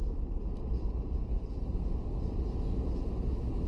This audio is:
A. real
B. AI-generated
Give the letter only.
A